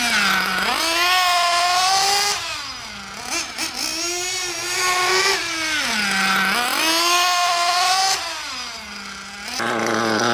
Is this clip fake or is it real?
real